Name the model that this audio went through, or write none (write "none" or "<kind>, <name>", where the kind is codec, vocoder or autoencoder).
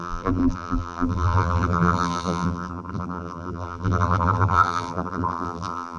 vocoder, BigVGAN v2